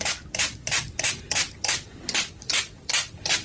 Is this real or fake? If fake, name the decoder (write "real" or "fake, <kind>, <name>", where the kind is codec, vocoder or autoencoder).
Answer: fake, vocoder, BigVGAN v2